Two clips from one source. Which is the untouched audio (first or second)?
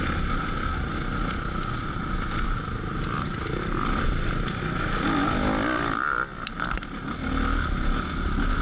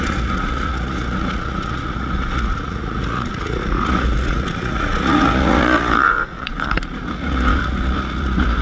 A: first